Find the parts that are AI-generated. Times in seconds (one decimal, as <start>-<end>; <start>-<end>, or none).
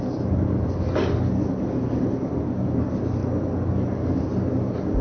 none